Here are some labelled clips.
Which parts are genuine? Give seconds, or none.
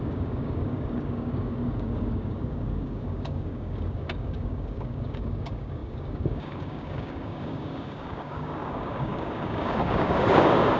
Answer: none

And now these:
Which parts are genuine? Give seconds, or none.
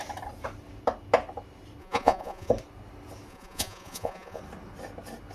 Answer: 0.0-1.8; 2.5-3.3; 4.4-5.3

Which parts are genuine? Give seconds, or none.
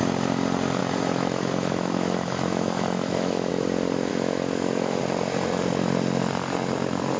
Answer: 0.0-0.8; 3.5-4.1; 5.0-7.2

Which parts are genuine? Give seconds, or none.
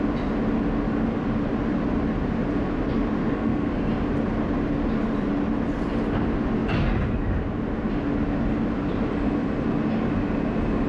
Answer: 0.0-3.2; 3.9-10.9